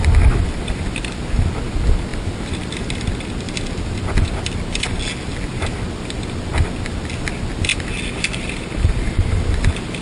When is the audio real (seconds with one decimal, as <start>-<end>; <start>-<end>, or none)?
0.0-7.7; 9.6-10.0

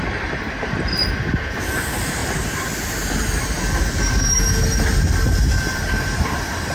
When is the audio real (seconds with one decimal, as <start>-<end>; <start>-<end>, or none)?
1.0-1.6; 2.2-5.6